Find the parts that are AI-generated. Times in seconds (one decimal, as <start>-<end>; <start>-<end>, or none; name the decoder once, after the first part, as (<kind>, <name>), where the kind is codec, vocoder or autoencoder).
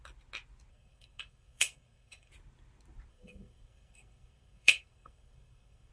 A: 0.7-2.3 (codec, SNAC); 3.1-5.9